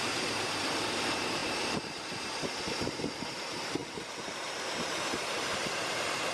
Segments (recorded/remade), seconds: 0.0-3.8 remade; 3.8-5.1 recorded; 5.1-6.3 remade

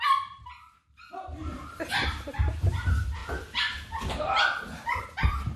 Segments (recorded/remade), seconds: 0.0-3.2 remade; 3.2-5.0 recorded; 5.0-5.6 remade

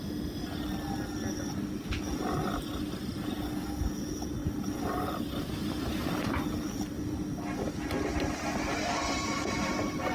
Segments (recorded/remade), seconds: 0.0-4.4 recorded; 4.4-6.3 remade; 6.3-8.1 recorded; 8.1-9.6 remade; 9.6-10.1 recorded

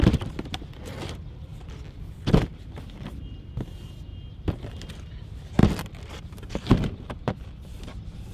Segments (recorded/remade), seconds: 0.0-1.5 remade; 1.5-2.4 recorded; 2.4-8.3 remade

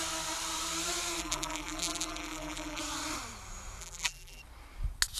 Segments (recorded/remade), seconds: 0.0-1.2 recorded; 1.2-2.8 remade; 2.8-3.8 recorded; 3.8-4.4 remade; 4.4-5.2 recorded

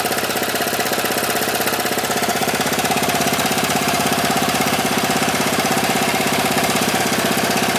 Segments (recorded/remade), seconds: 0.0-2.3 recorded; 2.3-7.0 remade; 7.0-7.8 recorded